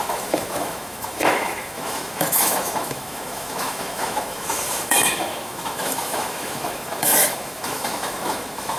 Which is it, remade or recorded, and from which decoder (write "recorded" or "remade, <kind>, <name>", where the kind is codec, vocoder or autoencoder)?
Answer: remade, autoencoder, DAC-VAE